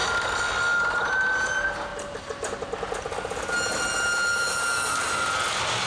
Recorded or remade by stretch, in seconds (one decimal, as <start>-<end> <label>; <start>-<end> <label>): 0.0-5.9 recorded